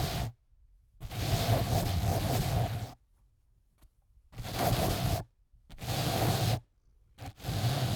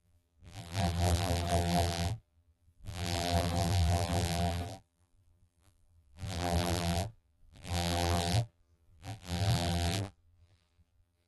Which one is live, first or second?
first